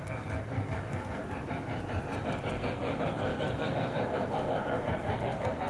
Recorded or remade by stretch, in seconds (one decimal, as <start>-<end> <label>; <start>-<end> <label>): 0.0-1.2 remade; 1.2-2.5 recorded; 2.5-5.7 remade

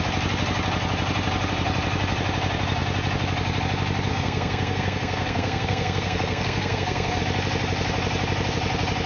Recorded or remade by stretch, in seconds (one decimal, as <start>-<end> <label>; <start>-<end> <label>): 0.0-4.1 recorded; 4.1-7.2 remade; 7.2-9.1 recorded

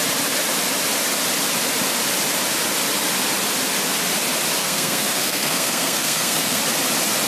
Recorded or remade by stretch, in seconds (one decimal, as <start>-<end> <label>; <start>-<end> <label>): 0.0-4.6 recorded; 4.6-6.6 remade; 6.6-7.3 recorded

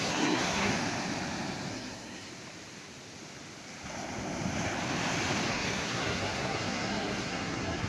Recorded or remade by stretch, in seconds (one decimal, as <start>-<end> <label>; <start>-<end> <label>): 0.0-0.7 remade; 0.7-1.7 recorded; 1.7-2.3 remade; 2.3-5.5 recorded; 5.5-7.9 remade

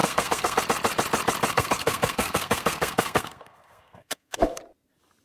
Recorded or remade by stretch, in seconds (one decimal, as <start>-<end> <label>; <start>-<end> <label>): 0.0-0.6 remade; 0.6-1.5 recorded; 1.5-4.6 remade; 4.6-5.2 recorded

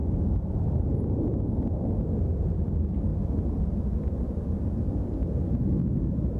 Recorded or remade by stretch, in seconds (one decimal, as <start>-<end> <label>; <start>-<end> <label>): 0.0-6.4 recorded

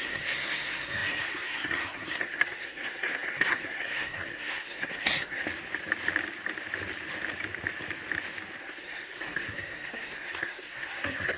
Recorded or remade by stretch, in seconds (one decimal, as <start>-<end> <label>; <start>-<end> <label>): 0.0-5.4 remade; 5.4-8.6 recorded; 8.6-11.4 remade